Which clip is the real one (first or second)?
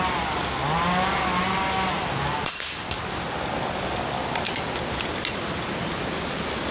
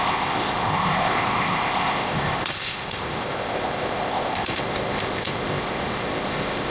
first